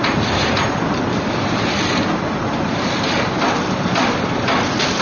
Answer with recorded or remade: remade